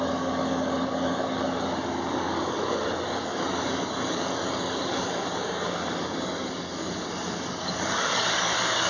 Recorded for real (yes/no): no